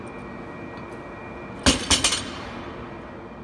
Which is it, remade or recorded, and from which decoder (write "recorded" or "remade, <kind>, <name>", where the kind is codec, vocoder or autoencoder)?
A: recorded